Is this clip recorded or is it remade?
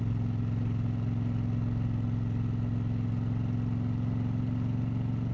recorded